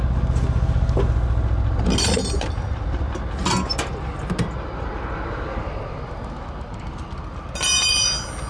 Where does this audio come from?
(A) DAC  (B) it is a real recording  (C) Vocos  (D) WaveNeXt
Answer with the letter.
B